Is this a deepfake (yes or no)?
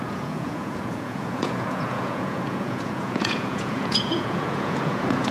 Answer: yes